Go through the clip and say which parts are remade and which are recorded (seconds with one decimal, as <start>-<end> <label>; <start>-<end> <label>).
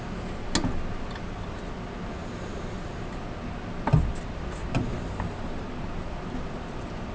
0.0-7.1 recorded